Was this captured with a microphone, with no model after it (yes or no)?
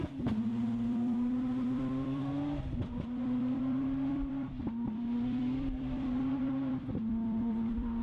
no